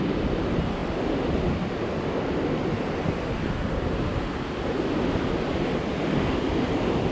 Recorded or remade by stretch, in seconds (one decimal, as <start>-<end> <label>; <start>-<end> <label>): 0.0-7.1 recorded